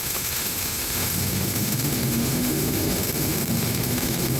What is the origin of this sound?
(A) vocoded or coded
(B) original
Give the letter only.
A